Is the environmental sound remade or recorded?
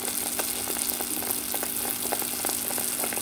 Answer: recorded